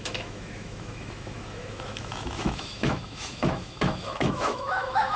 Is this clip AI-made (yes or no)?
yes